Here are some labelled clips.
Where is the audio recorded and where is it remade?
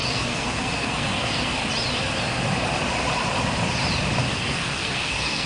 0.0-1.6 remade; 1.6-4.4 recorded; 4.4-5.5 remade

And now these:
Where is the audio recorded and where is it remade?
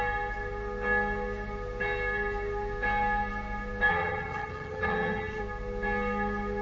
0.0-3.9 recorded; 3.9-5.4 remade; 5.4-6.6 recorded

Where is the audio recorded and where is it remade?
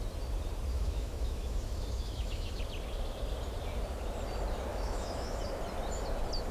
0.0-0.7 recorded; 0.7-2.6 remade; 2.6-4.7 recorded; 4.7-5.4 remade; 5.4-6.5 recorded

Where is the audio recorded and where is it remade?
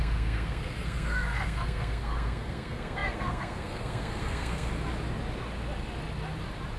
0.0-4.7 remade; 4.7-6.8 recorded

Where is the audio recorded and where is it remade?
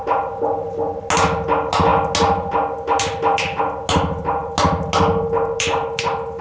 0.0-6.4 recorded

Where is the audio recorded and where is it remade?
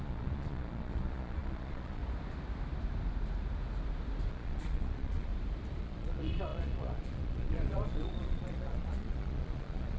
0.0-2.0 remade; 2.0-4.3 recorded; 4.3-5.3 remade; 5.3-5.8 recorded; 5.8-10.0 remade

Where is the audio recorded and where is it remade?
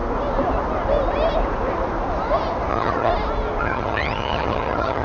0.0-2.7 recorded; 2.7-3.1 remade; 3.1-3.6 recorded; 3.6-5.0 remade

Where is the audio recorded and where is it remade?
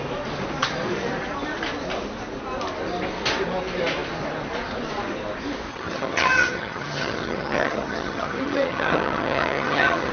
0.0-5.7 recorded; 5.7-10.1 remade